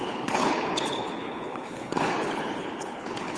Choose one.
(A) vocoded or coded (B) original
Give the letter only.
A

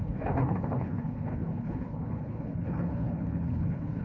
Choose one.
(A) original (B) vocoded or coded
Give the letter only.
B